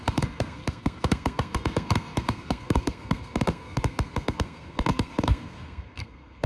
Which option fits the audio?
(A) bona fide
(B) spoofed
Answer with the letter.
B